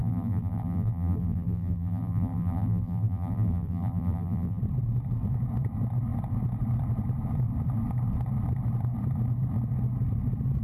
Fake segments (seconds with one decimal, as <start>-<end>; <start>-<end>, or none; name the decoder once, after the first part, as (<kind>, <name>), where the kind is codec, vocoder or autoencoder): 0.0-4.6 (vocoder, BigVGAN v2)